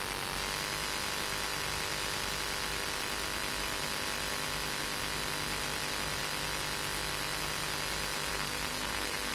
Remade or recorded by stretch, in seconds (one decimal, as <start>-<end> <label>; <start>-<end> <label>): 0.0-8.3 recorded; 8.3-9.3 remade